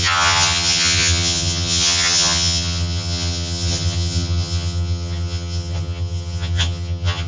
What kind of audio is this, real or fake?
fake